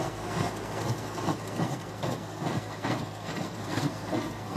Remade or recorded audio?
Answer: remade